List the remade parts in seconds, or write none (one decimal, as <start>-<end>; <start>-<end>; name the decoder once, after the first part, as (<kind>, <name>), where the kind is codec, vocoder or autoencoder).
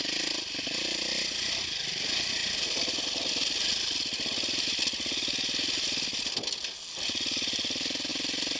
none